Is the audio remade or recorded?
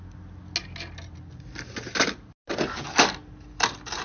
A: recorded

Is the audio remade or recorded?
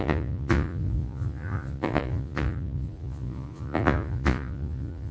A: remade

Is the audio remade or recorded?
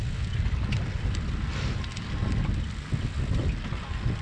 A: recorded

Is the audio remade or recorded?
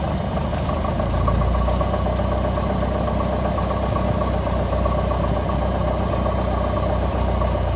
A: recorded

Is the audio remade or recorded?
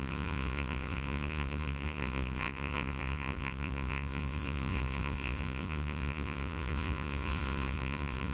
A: remade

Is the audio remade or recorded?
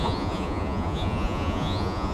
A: remade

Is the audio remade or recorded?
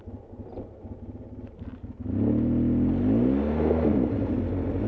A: recorded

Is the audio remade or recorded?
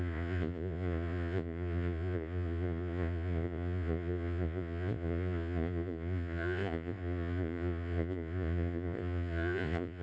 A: remade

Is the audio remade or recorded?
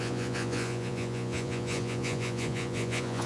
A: remade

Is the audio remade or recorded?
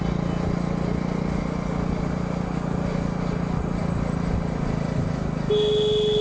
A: recorded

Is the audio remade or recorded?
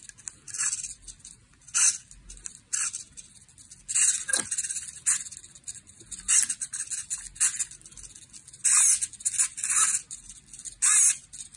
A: recorded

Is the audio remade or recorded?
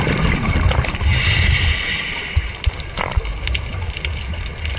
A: recorded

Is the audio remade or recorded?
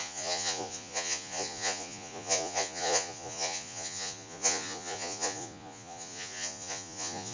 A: remade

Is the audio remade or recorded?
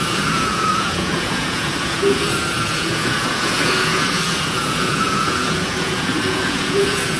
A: remade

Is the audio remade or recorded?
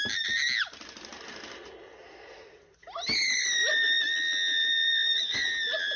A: recorded